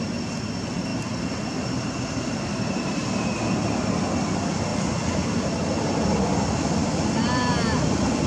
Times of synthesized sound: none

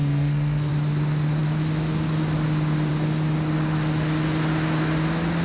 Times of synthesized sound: 0.0-0.7 (codec, SNAC)